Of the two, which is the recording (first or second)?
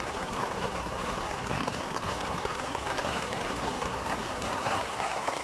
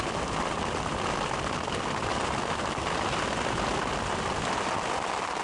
second